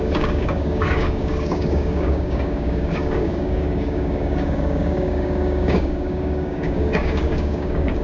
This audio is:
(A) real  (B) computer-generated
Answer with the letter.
B